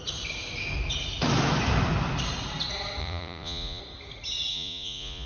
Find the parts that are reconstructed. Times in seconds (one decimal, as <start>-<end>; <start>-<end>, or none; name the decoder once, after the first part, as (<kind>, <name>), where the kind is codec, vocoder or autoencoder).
3.0-3.8 (vocoder, Vocos); 4.5-5.3